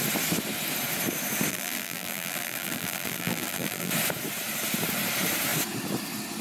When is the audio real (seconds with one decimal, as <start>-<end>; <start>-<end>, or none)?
0.0-1.5; 3.9-6.4